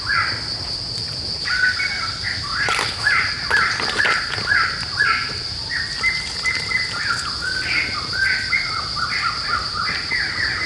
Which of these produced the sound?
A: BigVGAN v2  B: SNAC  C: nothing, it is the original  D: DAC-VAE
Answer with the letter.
C